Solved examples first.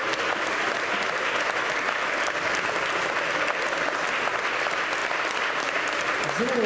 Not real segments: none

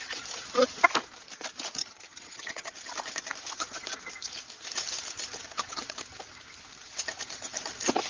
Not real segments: 1.8-2.7 (vocoder, HiFi-GAN)

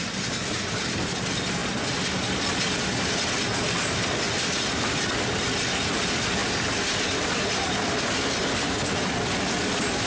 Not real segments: none

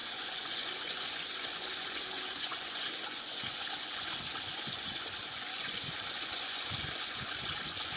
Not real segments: 0.0-8.0 (vocoder, Vocos)

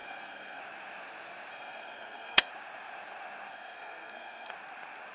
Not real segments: 0.0-0.6 (codec, SNAC); 1.5-2.5; 3.5-4.5